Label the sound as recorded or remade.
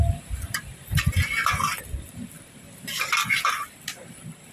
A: recorded